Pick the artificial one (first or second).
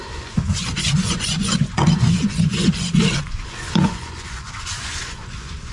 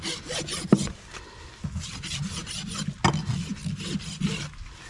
first